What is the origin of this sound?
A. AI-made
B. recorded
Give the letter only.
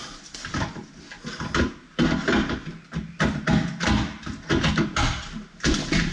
B